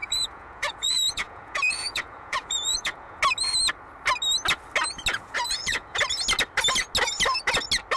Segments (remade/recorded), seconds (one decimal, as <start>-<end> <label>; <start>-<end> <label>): 0.0-3.2 remade; 3.2-5.1 recorded; 5.1-6.0 remade; 6.0-8.0 recorded